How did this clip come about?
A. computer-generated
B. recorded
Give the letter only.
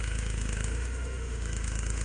A